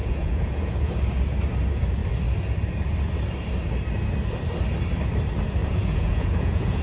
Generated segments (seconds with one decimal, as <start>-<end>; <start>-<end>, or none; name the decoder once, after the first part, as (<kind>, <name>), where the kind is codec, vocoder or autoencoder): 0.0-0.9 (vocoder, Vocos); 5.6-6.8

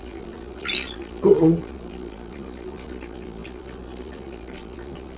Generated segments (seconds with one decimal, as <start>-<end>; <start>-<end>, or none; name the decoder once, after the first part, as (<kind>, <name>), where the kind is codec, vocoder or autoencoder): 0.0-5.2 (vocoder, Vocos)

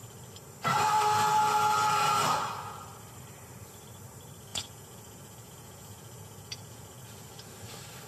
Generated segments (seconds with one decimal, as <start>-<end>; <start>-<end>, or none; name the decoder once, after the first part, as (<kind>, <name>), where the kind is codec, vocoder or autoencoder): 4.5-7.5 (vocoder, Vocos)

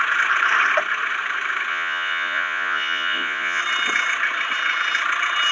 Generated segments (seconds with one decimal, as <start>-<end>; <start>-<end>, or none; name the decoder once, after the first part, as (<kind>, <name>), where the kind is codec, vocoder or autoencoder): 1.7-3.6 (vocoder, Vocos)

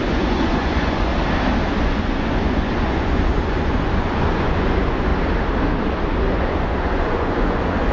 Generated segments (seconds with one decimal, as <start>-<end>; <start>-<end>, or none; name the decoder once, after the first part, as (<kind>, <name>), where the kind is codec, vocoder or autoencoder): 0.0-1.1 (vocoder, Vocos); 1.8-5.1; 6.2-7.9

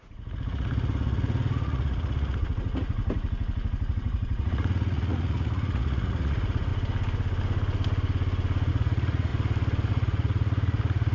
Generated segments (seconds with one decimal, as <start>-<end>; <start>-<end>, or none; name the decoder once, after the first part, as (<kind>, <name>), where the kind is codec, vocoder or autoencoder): 0.0-3.0 (vocoder, Vocos); 3.9-6.7; 8.7-9.3; 9.9-11.1

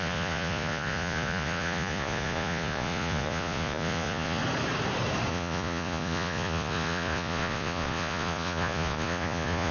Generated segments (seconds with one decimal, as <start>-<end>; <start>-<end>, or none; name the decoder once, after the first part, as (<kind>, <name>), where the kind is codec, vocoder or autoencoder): 0.0-4.4 (vocoder, Vocos); 5.3-9.7